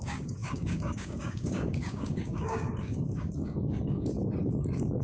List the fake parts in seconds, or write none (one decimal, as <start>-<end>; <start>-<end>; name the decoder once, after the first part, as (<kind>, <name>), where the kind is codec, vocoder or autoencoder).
0.0-5.0 (codec, DAC)